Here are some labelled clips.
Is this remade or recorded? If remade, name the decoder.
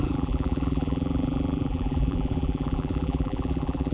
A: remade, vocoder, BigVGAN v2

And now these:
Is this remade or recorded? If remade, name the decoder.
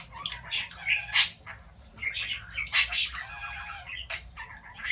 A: recorded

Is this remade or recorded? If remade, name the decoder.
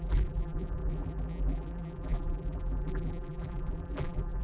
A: remade, vocoder, BigVGAN v2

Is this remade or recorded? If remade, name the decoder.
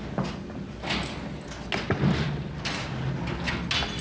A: recorded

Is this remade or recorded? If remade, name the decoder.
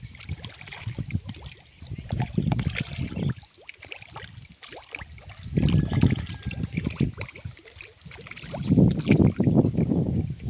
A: recorded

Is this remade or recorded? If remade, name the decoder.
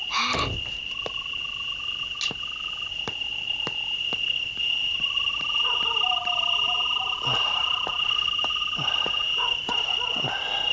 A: recorded